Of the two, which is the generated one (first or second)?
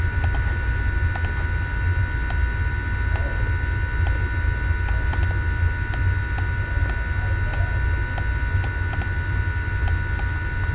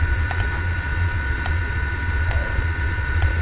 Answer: second